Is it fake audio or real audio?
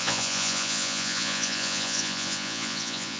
fake